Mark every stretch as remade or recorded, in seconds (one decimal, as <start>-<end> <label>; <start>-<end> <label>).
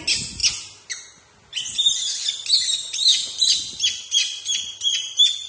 0.0-5.5 recorded